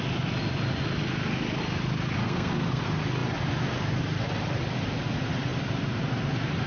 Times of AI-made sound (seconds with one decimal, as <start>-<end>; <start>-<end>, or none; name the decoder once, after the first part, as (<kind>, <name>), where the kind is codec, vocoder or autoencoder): 2.2-2.8 (codec, SNAC)